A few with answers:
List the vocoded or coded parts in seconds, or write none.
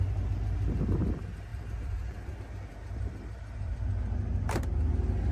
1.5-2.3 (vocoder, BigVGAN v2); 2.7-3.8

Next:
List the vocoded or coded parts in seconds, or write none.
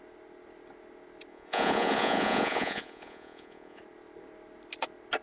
1.3-3.8 (vocoder, Vocos)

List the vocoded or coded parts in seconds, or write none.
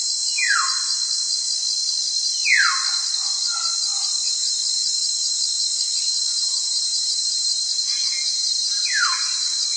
6.3-9.8 (vocoder, BigVGAN v2)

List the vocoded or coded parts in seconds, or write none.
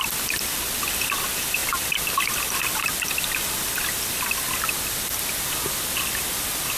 none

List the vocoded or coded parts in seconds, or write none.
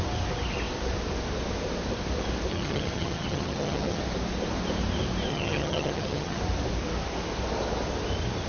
2.5-4.0 (vocoder, HiFi-GAN); 5.3-6.4